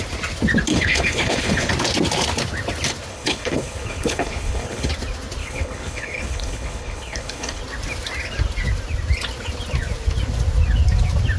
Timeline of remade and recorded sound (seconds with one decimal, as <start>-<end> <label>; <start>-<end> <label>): 0.0-0.7 recorded; 0.7-1.7 remade; 1.7-3.1 recorded; 3.1-4.9 remade; 4.9-5.4 recorded; 5.4-7.6 remade; 7.6-11.4 recorded